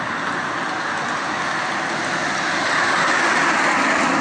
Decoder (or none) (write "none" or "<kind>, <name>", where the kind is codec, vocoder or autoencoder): none